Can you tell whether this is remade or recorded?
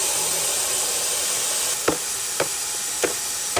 recorded